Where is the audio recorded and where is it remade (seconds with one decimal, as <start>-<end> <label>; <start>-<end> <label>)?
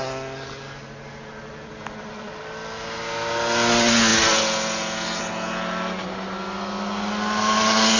0.0-8.0 recorded